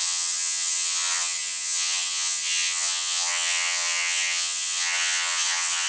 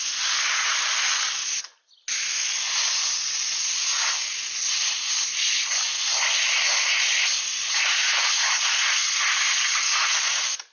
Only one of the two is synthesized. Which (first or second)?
first